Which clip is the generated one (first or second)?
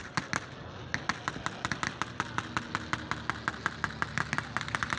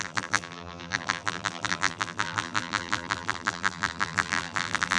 second